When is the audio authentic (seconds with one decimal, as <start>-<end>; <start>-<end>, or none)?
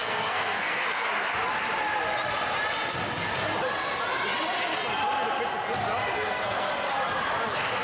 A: 1.1-6.1; 6.7-7.8